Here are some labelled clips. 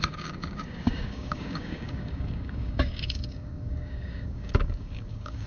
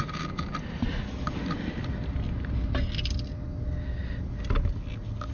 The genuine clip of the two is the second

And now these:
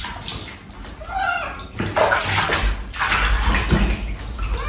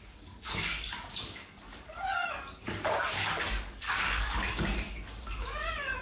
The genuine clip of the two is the first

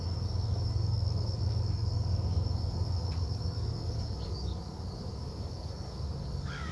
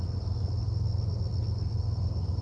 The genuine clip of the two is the second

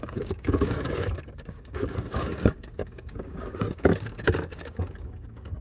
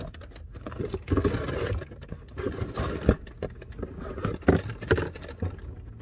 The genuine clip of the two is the second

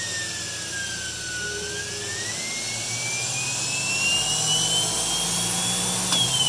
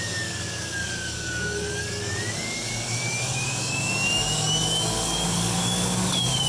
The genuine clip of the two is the first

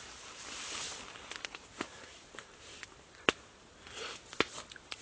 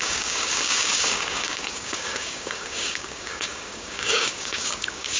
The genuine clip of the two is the first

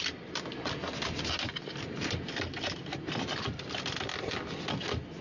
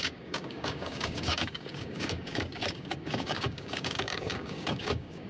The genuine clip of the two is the first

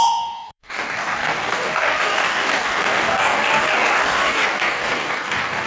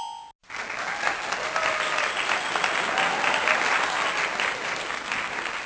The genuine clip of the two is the second